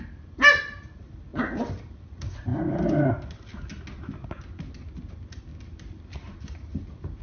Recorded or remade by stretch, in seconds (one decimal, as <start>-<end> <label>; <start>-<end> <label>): 0.0-5.5 recorded; 5.5-7.2 remade